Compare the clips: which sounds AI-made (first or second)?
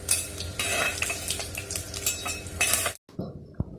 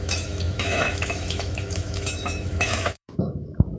second